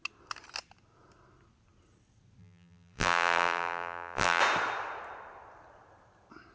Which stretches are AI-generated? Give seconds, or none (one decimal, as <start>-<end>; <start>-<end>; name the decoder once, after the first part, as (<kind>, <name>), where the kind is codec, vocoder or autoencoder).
2.4-4.4 (vocoder, BigVGAN v2)